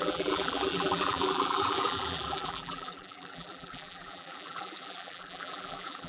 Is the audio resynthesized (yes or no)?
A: yes